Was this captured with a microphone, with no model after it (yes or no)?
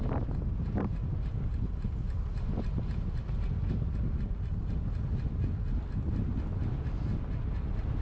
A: yes